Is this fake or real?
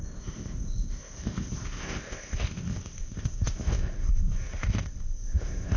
fake